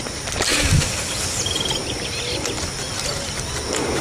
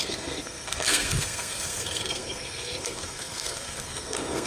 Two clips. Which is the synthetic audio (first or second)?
second